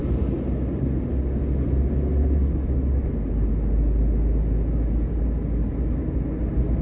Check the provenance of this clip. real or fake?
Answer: real